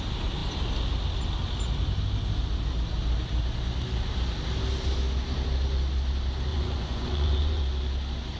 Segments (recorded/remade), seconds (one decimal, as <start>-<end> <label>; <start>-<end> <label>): 0.0-6.5 recorded; 6.5-7.6 remade; 7.6-8.4 recorded